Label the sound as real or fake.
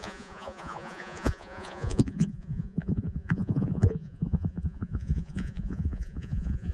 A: fake